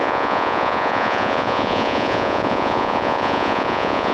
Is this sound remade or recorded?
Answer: remade